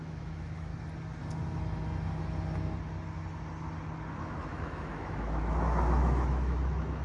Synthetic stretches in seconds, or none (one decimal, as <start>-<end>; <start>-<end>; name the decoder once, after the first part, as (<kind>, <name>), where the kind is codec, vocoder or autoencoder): 0.0-0.7 (autoencoder, DAC-VAE); 4.2-7.0